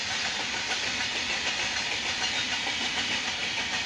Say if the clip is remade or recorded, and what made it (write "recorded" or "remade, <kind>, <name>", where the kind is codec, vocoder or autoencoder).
recorded